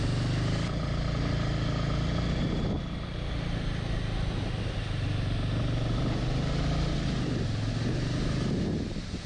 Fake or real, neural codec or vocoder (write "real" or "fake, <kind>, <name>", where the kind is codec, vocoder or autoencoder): real